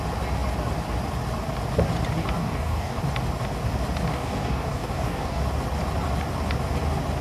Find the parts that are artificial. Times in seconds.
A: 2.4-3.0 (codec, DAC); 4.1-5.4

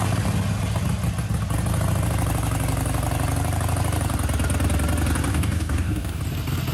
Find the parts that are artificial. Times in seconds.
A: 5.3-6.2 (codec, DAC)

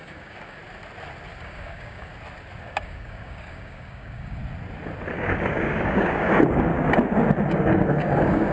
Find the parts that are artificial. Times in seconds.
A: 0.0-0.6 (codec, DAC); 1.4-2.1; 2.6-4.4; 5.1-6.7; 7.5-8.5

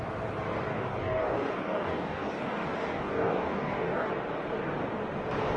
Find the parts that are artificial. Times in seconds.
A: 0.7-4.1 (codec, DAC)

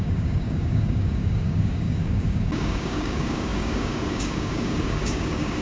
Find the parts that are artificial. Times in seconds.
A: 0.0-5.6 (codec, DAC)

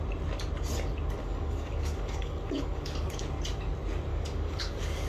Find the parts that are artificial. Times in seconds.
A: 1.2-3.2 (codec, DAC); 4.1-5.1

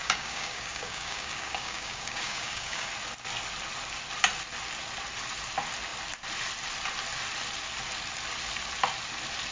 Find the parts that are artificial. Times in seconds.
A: 0.0-2.9 (codec, DAC)